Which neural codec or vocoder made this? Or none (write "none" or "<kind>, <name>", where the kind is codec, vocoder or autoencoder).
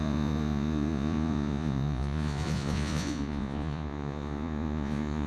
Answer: vocoder, Vocos